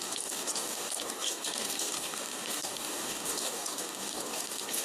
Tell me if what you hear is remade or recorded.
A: remade